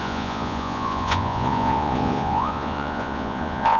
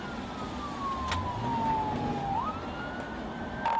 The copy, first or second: first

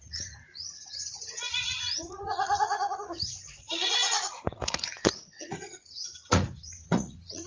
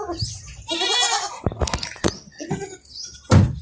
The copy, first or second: first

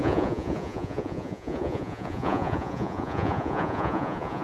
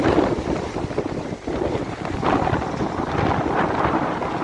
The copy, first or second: first